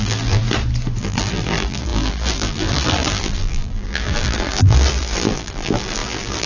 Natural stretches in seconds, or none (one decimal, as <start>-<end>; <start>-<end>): 0.4-1.0